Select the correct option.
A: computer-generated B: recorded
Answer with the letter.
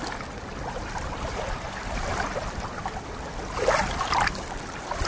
B